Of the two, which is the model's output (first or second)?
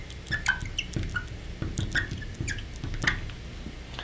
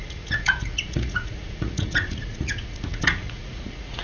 second